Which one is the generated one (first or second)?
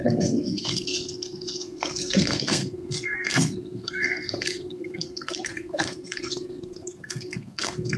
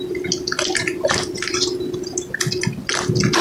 first